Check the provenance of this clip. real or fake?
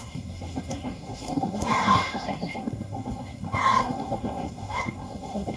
fake